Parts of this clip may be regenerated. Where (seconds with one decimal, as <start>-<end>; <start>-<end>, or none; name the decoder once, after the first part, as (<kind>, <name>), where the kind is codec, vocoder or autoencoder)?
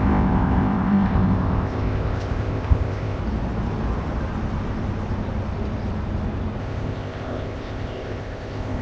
0.0-3.2 (codec, ZipCodec); 6.6-8.8